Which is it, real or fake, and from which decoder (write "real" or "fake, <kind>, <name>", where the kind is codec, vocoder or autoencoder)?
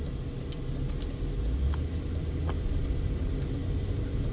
real